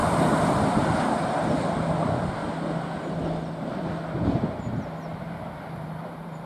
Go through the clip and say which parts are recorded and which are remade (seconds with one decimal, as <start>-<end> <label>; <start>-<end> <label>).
0.0-5.1 recorded; 5.1-6.5 remade

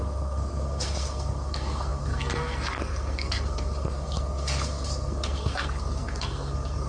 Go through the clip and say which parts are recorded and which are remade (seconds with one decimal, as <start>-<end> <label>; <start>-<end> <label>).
0.0-6.9 remade

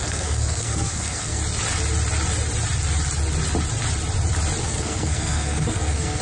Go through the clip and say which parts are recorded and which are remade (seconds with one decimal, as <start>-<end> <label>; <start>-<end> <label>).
0.0-1.4 remade; 1.4-4.6 recorded; 4.6-6.2 remade

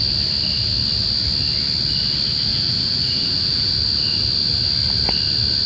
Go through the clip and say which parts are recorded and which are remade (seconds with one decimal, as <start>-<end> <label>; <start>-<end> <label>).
0.0-2.5 recorded; 2.5-3.7 remade; 3.7-5.7 recorded

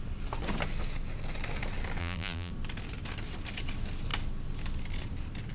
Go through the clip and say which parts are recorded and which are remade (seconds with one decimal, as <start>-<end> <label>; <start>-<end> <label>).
0.0-2.0 recorded; 2.0-2.5 remade; 2.5-5.5 recorded

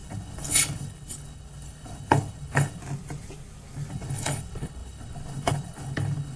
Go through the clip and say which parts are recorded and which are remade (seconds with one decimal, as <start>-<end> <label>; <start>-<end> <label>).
0.0-2.8 remade; 2.8-3.9 recorded; 3.9-6.4 remade